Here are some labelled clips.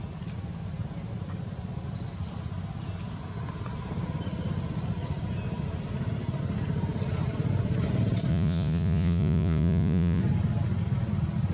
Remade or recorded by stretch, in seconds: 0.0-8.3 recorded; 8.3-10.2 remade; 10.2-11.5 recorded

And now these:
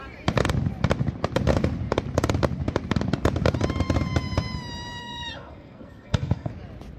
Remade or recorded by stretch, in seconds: 0.0-5.0 recorded; 5.0-6.5 remade; 6.5-7.0 recorded

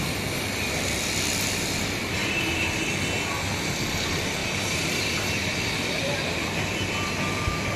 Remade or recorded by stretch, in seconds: 0.0-2.2 recorded; 2.2-2.8 remade; 2.8-4.4 recorded; 4.4-5.3 remade; 5.3-7.8 recorded

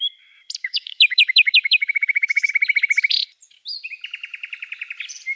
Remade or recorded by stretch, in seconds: 0.0-0.6 recorded; 0.6-2.5 remade; 2.5-5.4 recorded

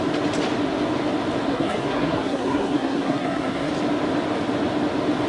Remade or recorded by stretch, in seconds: 0.0-1.5 recorded; 1.5-3.7 remade; 3.7-5.3 recorded

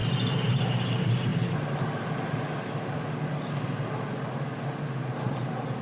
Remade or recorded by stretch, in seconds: 0.0-5.8 recorded

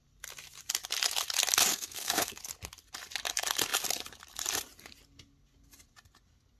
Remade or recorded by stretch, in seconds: 0.0-1.7 recorded; 1.7-2.4 remade; 2.4-6.6 recorded